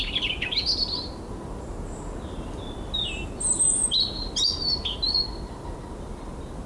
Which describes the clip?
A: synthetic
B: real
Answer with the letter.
B